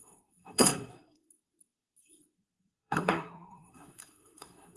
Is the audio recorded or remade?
remade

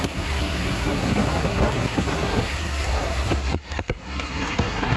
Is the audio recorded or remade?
remade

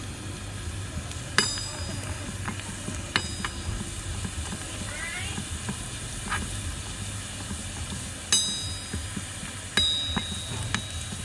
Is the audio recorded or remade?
recorded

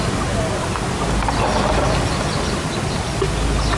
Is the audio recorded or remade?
recorded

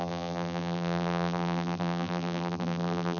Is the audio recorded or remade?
remade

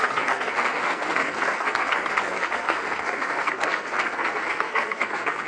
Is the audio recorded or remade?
remade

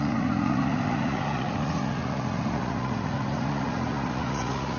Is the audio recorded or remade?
remade